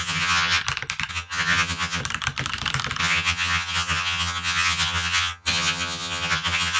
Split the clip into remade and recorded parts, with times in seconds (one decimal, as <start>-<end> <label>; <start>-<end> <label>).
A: 0.0-0.6 remade; 0.6-1.1 recorded; 1.1-2.0 remade; 2.0-3.0 recorded; 3.0-6.8 remade